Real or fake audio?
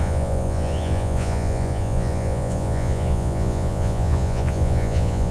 fake